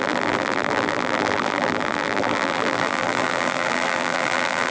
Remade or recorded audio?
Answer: remade